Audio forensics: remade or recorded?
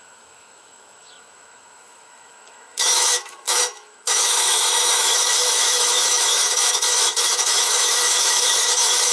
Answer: remade